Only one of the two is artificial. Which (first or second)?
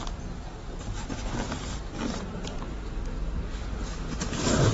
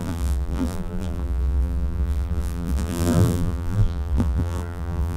second